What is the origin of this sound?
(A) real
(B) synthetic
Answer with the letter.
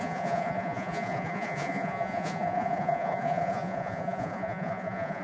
B